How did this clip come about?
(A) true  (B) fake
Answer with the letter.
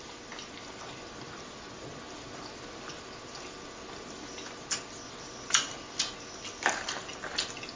A